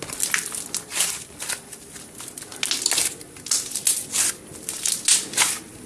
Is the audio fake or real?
real